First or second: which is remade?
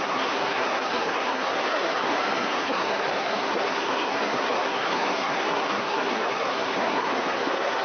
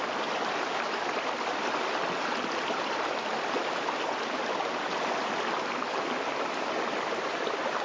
first